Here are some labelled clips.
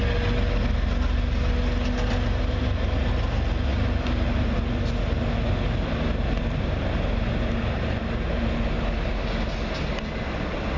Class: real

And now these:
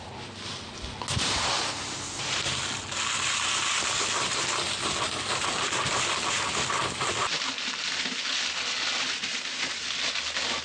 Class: real